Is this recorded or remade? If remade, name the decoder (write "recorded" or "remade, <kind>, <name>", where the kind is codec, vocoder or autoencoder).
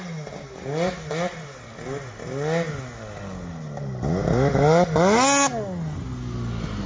recorded